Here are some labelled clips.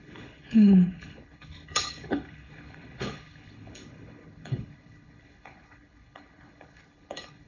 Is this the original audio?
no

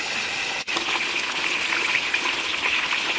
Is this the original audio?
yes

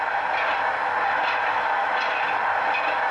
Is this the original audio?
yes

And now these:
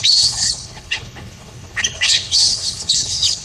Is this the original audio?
no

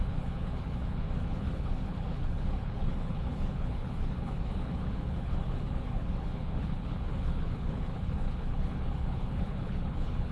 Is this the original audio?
no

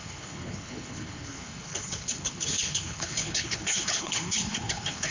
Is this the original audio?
no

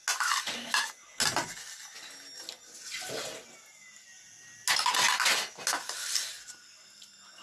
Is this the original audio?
yes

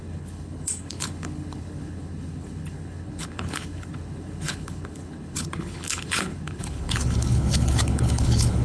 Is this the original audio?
no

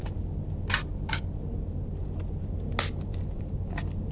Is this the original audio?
yes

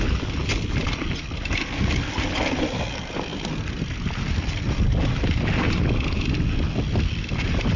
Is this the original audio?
yes